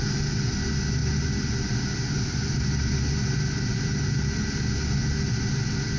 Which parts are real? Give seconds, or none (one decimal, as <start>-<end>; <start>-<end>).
0.0-1.0; 4.6-5.0